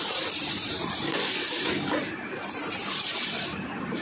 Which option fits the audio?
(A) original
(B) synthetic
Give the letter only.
B